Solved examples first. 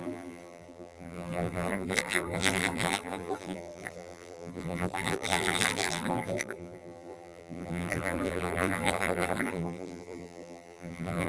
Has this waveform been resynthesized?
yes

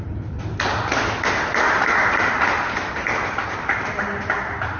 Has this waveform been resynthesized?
no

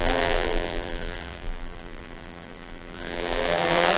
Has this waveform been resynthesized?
yes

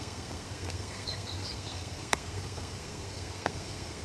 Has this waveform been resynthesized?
yes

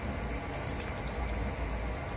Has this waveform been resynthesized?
no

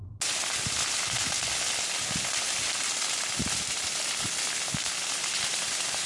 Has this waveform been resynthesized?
no